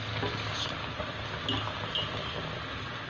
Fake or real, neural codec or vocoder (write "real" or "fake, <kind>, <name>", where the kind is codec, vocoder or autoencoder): real